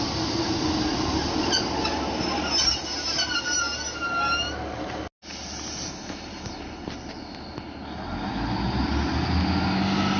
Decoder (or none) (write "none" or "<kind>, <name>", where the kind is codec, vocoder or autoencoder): none